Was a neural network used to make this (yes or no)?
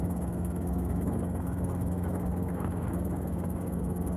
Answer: yes